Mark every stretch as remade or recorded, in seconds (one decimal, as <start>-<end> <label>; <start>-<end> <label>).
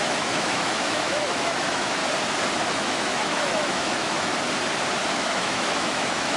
0.0-2.0 remade; 2.0-2.7 recorded; 2.7-4.3 remade; 4.3-5.1 recorded; 5.1-6.4 remade